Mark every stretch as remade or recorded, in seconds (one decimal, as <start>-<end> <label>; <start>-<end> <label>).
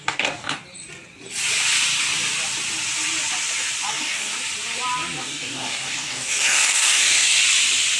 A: 0.0-0.6 remade; 0.6-3.9 recorded; 3.9-4.3 remade; 4.3-5.2 recorded; 5.2-7.4 remade; 7.4-8.0 recorded